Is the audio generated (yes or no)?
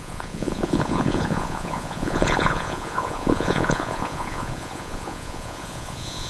yes